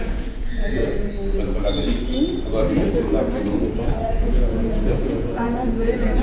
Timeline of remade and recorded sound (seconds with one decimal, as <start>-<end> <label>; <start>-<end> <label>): 0.0-0.8 remade; 0.8-4.0 recorded; 4.0-6.2 remade